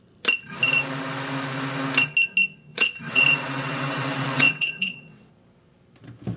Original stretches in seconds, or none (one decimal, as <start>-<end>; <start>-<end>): 0.0-2.7; 5.3-6.4

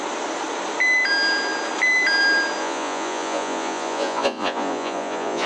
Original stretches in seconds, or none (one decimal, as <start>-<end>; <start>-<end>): 0.0-2.6

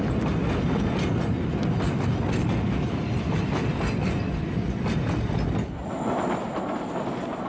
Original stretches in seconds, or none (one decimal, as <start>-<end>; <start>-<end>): 0.0-0.4; 2.5-7.5

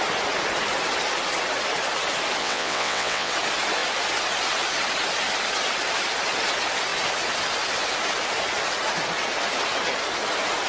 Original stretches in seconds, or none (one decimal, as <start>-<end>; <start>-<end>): 0.0-2.4; 3.3-10.7

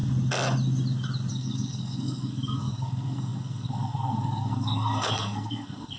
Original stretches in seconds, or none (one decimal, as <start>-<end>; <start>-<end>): 0.0-1.3